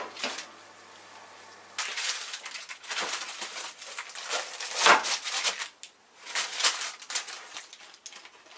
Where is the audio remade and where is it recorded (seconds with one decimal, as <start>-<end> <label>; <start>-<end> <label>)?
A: 0.0-8.6 recorded